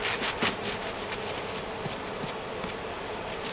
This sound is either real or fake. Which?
real